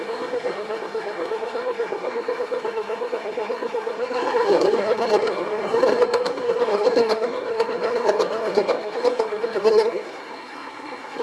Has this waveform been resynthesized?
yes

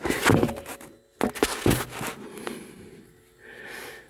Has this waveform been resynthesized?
no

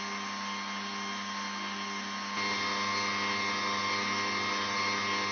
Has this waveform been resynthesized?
no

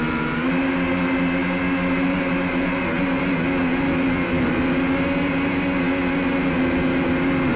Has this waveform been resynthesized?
no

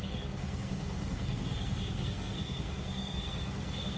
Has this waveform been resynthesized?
yes